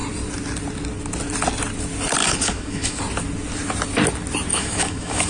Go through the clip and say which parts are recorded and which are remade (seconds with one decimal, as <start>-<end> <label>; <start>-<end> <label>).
0.0-2.2 recorded; 2.2-3.0 remade; 3.0-4.5 recorded; 4.5-5.3 remade